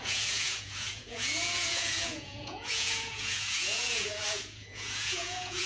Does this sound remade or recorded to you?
remade